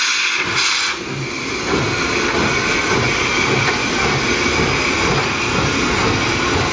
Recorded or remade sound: recorded